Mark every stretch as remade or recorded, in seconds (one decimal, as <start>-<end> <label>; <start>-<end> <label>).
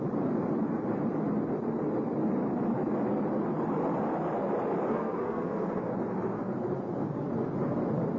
0.0-4.9 recorded; 4.9-5.8 remade; 5.8-8.2 recorded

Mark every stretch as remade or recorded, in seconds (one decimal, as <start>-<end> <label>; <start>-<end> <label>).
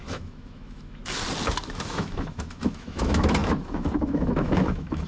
0.0-1.0 remade; 1.0-1.6 recorded; 1.6-5.1 remade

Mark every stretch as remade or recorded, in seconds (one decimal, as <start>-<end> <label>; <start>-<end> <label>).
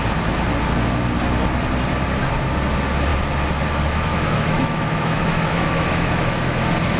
0.0-4.1 recorded; 4.1-6.6 remade; 6.6-7.0 recorded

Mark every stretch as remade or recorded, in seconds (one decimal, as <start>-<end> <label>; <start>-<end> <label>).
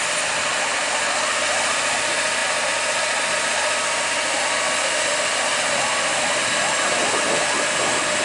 0.0-8.2 recorded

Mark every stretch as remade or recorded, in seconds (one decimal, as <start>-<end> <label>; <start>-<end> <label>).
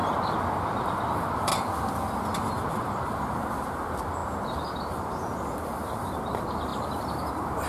0.0-0.6 recorded; 0.6-1.5 remade; 1.5-2.8 recorded; 2.8-7.7 remade